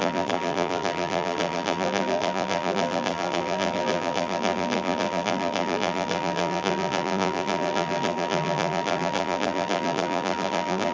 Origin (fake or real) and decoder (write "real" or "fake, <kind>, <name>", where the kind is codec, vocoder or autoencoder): fake, vocoder, BigVGAN v2